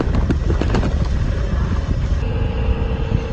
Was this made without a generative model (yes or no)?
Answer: yes